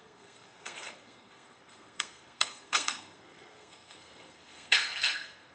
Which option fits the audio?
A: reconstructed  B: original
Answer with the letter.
A